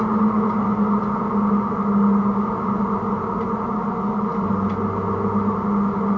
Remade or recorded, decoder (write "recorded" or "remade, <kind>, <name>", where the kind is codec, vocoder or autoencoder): recorded